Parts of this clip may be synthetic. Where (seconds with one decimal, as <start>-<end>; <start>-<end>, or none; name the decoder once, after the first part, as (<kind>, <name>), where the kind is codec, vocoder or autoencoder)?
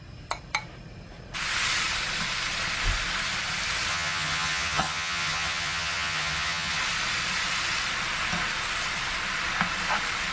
3.9-6.8 (vocoder, HiFi-GAN)